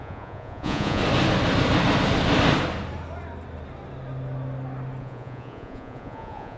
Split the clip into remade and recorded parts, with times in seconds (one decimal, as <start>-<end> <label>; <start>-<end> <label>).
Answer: 0.0-1.0 remade; 1.0-5.0 recorded; 5.0-6.6 remade